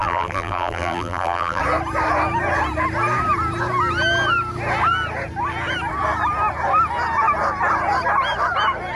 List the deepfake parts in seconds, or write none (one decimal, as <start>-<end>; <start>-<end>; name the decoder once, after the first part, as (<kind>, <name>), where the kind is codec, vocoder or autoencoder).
0.0-1.6 (vocoder, BigVGAN v2)